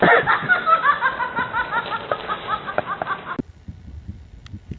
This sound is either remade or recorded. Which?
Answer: recorded